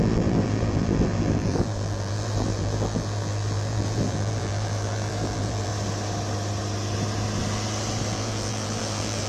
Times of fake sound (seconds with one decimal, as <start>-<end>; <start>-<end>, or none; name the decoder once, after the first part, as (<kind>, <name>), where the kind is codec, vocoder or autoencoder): 0.0-5.7 (vocoder, BigVGAN v2); 8.1-9.3